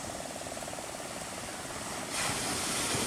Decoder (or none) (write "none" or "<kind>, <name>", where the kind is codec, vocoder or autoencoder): none